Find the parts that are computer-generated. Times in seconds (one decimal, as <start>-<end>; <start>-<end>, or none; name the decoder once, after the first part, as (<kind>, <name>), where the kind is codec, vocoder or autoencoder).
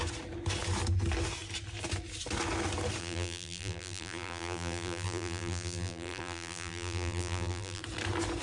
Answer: 3.0-7.8 (vocoder, BigVGAN v2)